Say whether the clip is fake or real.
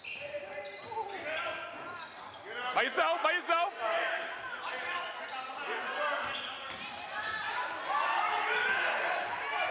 real